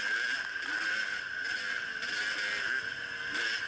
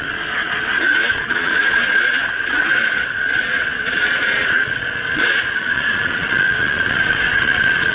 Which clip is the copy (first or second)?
second